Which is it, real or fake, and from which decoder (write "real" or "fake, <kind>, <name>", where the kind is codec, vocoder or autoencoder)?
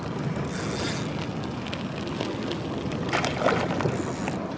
real